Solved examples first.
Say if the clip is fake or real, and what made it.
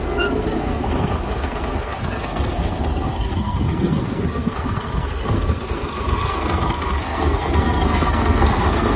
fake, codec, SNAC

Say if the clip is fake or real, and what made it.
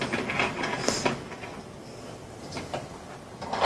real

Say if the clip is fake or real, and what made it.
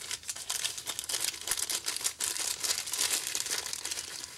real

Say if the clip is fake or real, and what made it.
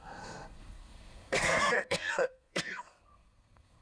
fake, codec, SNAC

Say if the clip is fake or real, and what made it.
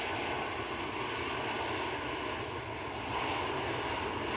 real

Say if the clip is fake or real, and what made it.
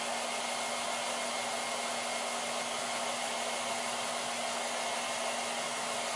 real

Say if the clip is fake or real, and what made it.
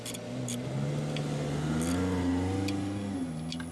real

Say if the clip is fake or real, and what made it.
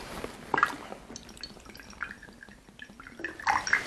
real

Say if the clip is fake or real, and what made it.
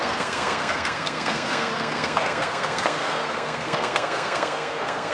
fake, codec, SNAC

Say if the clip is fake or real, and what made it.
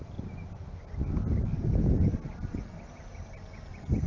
real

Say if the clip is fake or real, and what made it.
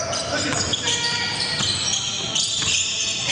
real